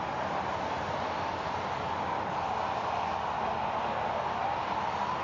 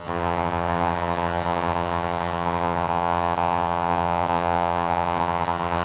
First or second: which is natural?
first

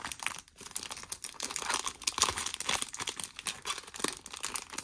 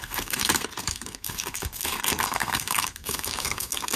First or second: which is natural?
first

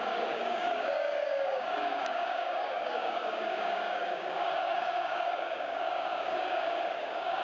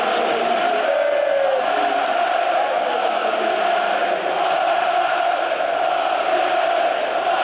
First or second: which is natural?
second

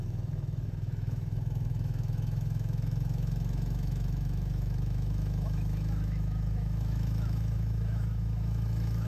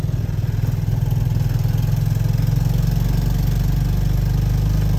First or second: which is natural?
second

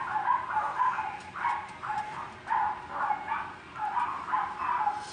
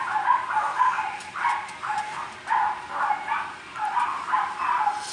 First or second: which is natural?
first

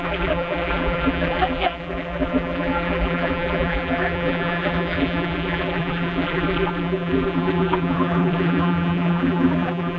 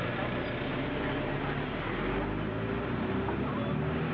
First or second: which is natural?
second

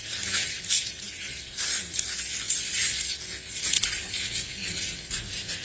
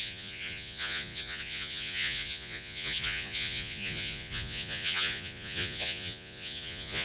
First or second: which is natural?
first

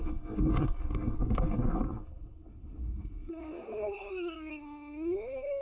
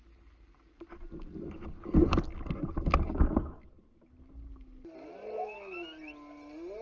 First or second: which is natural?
second